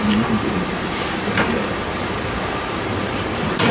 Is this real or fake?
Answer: fake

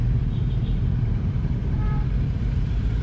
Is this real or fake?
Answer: fake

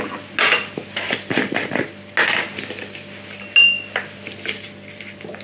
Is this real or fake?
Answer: real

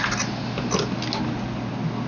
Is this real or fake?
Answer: real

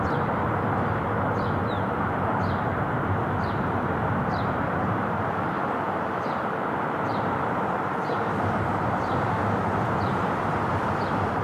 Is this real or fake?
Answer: fake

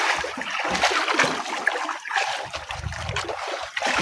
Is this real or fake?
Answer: real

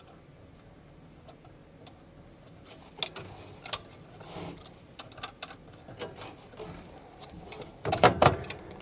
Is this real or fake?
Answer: real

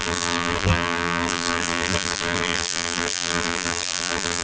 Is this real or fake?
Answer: fake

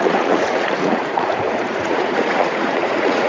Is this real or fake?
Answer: fake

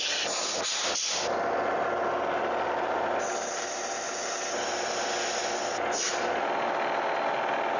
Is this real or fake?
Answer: real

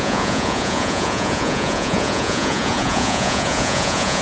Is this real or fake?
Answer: fake